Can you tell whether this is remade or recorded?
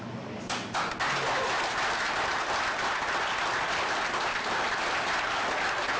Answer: recorded